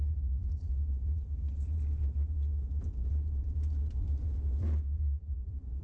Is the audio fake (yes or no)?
yes